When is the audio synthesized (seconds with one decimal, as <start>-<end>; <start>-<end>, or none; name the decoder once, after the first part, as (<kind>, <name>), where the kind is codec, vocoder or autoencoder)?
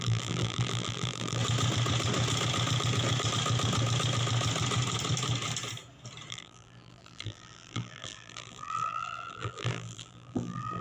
0.0-1.4 (vocoder, BigVGAN v2); 6.3-10.8